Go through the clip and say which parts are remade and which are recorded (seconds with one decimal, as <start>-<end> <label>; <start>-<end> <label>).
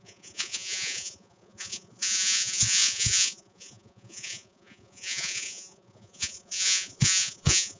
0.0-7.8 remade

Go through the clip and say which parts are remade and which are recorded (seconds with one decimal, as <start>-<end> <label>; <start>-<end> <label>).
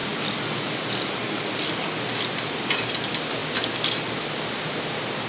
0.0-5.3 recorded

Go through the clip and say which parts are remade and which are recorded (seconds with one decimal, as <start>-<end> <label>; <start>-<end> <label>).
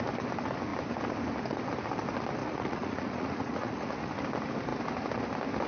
0.0-2.4 recorded; 2.4-4.1 remade; 4.1-5.7 recorded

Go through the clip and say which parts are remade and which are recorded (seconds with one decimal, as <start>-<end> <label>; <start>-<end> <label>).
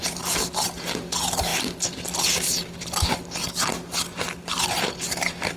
0.0-5.6 recorded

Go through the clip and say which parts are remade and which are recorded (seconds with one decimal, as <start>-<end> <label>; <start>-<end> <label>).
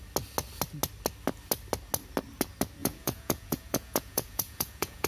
0.0-2.8 recorded; 2.8-5.1 remade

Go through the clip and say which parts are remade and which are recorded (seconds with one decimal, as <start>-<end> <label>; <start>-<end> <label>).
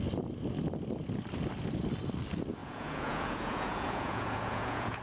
0.0-2.6 recorded; 2.6-5.0 remade